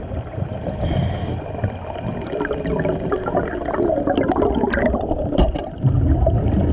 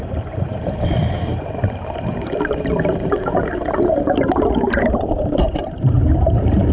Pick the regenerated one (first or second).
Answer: second